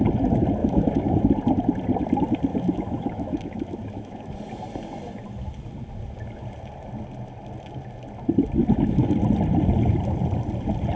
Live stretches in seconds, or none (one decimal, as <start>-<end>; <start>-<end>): 0.0-0.6; 1.3-2.5; 4.3-8.6; 9.1-11.0